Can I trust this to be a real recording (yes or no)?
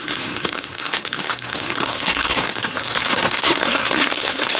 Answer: no